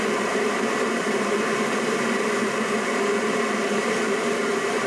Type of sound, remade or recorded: remade